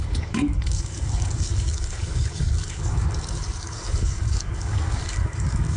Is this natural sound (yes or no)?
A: no